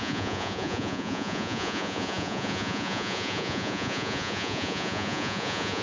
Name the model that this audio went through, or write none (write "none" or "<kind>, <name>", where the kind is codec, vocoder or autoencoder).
vocoder, Vocos